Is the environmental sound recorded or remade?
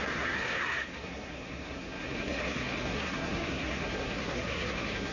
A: remade